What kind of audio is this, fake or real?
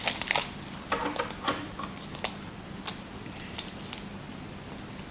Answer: real